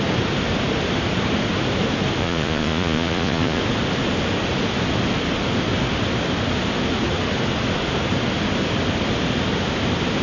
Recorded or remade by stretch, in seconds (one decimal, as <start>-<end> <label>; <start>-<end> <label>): 0.0-2.2 recorded; 2.2-3.6 remade; 3.6-10.2 recorded